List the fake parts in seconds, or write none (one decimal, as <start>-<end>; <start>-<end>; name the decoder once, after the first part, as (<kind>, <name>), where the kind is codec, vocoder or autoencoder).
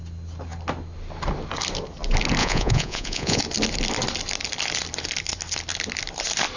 2.4-3.4 (vocoder, Vocos)